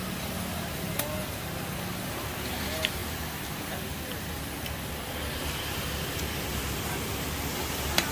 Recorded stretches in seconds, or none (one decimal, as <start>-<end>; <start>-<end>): 0.0-8.1